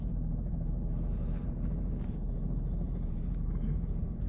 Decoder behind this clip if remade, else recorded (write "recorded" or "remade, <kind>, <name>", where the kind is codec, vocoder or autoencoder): remade, vocoder, BigVGAN v2